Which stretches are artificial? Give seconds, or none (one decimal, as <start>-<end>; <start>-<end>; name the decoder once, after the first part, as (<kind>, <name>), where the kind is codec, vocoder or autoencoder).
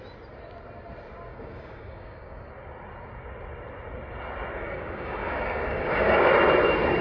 1.3-2.5 (codec, DAC); 4.5-6.3